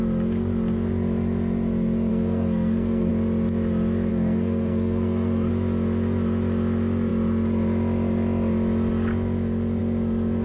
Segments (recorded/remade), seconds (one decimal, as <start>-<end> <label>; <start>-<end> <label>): 0.0-2.1 recorded; 2.1-3.1 remade; 3.1-4.1 recorded; 4.1-5.5 remade; 5.5-10.4 recorded